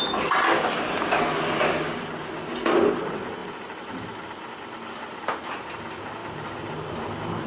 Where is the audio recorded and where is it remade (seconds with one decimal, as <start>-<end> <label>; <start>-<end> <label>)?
0.0-7.5 recorded